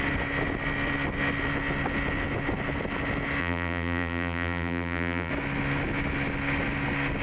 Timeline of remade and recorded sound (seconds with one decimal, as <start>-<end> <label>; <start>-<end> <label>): 0.0-3.4 recorded; 3.4-5.3 remade; 5.3-7.2 recorded